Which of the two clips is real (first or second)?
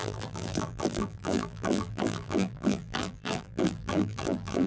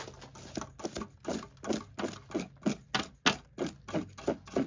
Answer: second